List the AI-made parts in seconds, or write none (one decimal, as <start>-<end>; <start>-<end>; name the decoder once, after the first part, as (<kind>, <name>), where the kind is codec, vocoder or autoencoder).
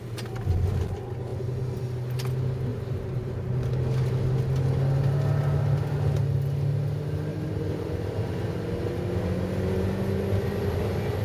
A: 2.7-3.3 (vocoder, BigVGAN v2); 7.3-8.4